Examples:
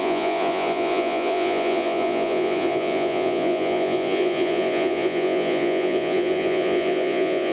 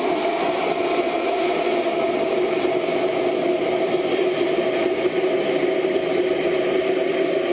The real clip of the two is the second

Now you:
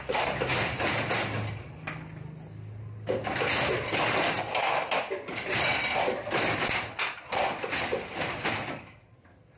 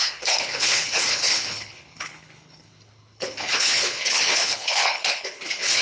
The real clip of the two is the first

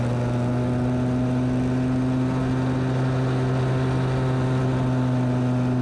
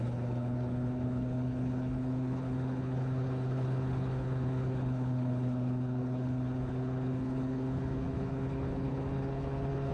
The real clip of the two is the first